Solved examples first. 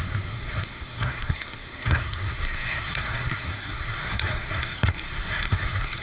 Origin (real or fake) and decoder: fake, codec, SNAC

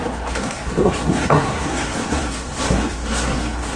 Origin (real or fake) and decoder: fake, codec, SNAC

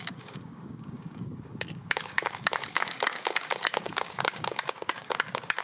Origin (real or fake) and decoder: fake, codec, DAC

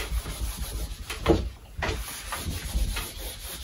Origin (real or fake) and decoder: real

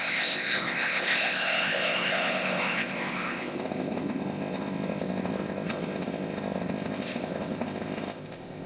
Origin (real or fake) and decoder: fake, codec, ZipCodec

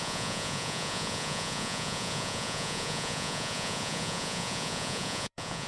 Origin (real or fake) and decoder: fake, vocoder, Vocos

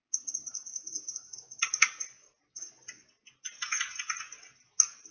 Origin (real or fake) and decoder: real